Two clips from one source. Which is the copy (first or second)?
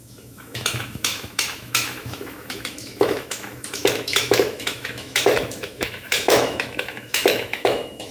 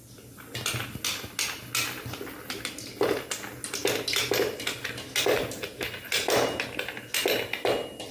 first